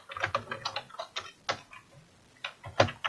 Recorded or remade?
recorded